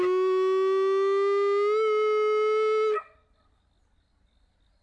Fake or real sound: real